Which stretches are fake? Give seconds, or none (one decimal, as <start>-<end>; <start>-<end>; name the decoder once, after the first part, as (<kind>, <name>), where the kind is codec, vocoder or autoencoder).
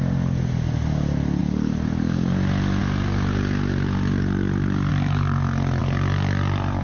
4.9-5.8 (vocoder, BigVGAN v2)